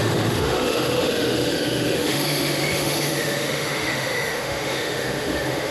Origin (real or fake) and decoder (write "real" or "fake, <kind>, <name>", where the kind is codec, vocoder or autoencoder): fake, autoencoder, DAC-VAE